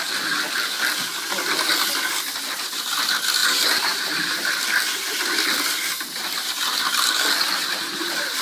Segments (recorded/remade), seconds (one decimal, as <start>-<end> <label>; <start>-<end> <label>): 0.0-3.4 recorded; 3.4-4.6 remade; 4.6-7.6 recorded; 7.6-8.4 remade